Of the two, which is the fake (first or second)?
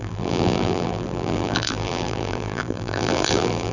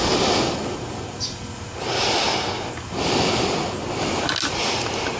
first